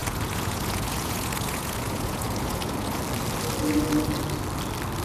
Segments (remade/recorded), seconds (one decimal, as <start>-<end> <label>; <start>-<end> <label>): 0.0-3.0 remade; 3.0-5.0 recorded